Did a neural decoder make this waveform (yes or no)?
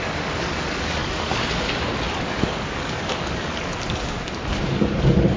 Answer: yes